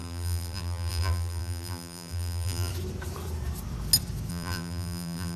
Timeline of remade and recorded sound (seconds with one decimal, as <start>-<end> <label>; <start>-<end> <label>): 0.0-2.7 remade; 2.7-4.3 recorded; 4.3-5.4 remade